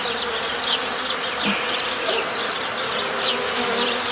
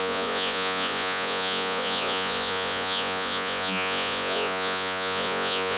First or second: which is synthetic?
second